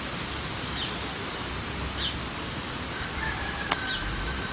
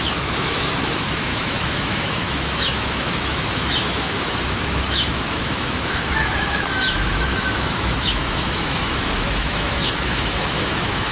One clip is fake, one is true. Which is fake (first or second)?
second